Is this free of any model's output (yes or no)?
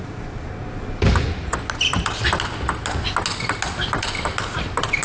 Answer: yes